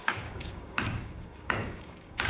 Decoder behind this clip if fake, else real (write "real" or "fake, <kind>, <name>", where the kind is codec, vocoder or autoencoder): fake, codec, DAC